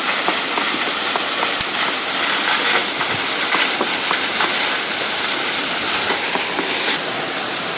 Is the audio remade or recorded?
recorded